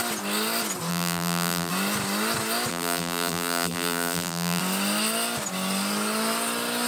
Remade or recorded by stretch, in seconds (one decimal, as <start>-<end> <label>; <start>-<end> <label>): 0.0-0.9 recorded; 0.9-1.7 remade; 1.7-2.7 recorded; 2.7-4.6 remade; 4.6-6.9 recorded